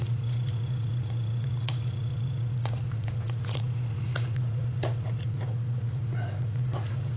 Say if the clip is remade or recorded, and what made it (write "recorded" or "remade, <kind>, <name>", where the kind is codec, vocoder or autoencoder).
remade, vocoder, Vocos